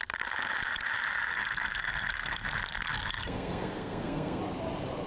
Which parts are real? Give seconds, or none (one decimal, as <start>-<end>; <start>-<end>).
0.0-1.3; 2.5-2.9; 4.4-5.1